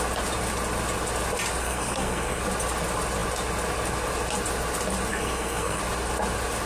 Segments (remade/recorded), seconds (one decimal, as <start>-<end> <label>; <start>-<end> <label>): 0.0-1.6 recorded; 1.6-2.4 remade; 2.4-5.1 recorded; 5.1-5.8 remade; 5.8-6.7 recorded